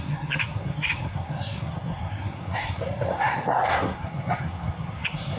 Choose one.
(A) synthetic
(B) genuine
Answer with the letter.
A